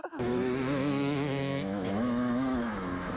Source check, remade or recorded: remade